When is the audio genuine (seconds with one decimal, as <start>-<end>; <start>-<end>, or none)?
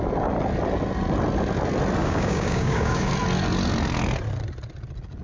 0.0-2.0; 3.1-5.2